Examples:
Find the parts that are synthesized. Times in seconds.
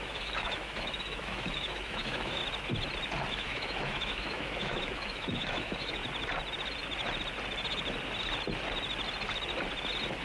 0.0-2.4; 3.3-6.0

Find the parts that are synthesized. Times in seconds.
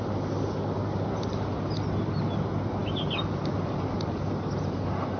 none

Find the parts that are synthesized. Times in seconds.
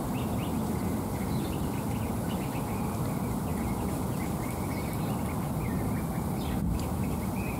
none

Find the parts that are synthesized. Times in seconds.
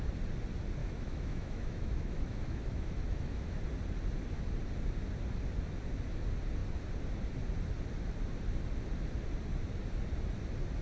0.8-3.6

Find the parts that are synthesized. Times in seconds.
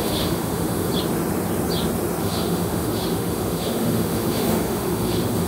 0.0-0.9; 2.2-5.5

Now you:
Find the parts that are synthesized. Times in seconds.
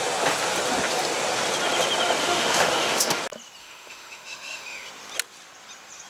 2.2-3.2; 3.6-4.9